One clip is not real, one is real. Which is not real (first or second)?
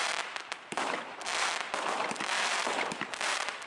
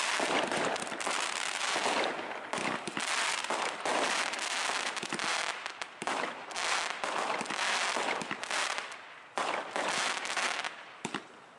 first